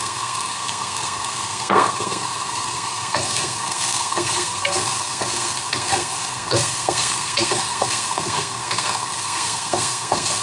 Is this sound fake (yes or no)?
yes